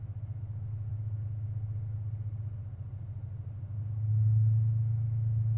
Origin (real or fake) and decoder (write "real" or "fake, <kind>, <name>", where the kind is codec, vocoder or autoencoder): real